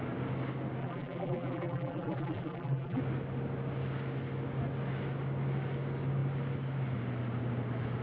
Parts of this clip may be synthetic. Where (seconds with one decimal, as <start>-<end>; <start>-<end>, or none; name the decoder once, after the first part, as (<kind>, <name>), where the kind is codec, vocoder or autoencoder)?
0.8-3.0 (vocoder, BigVGAN v2)